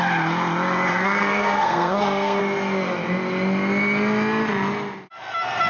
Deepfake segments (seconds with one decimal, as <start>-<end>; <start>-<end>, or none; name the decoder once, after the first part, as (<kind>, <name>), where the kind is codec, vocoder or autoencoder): 0.9-2.4 (codec, SNAC)